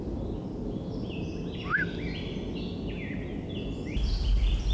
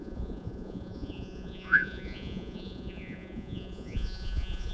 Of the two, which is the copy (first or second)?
second